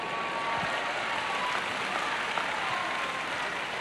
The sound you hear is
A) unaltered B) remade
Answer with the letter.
A